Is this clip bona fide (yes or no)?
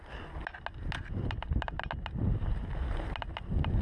yes